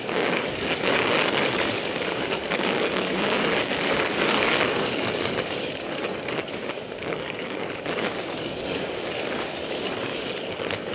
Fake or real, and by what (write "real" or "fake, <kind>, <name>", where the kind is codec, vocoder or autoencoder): fake, codec, DAC